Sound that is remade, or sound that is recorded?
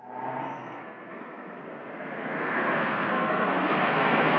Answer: remade